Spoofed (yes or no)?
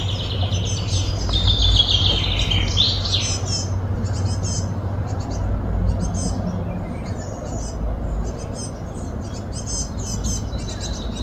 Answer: no